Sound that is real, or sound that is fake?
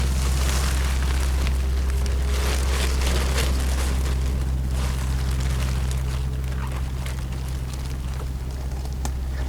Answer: real